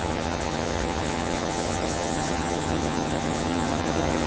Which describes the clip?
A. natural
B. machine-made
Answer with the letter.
B